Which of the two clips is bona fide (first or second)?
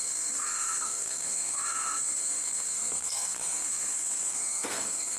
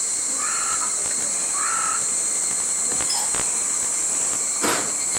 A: second